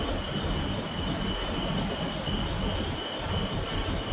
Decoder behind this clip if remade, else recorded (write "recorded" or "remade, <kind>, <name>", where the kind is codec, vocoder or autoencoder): recorded